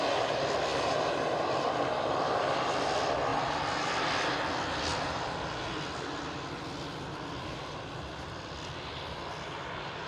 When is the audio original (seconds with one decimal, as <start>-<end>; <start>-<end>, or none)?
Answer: 0.0-10.1